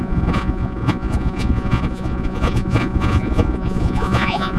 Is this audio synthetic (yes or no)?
yes